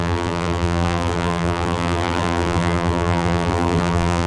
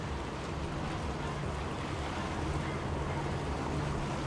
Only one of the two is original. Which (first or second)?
second